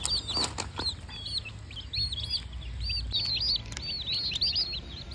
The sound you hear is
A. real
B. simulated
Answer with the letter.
A